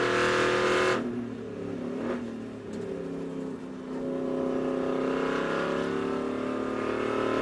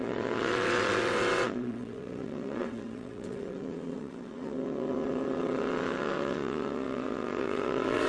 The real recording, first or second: first